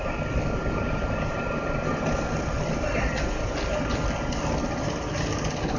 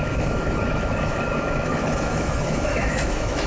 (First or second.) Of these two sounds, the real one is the first